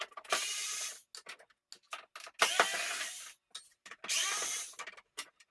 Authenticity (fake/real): real